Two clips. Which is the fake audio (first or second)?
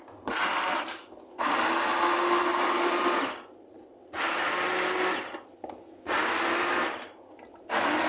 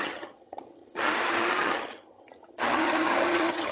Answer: second